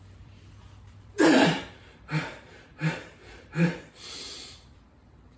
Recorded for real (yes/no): no